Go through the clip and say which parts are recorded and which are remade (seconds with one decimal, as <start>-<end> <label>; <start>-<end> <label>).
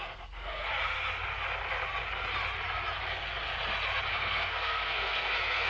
0.0-0.7 remade; 0.7-4.1 recorded; 4.1-5.7 remade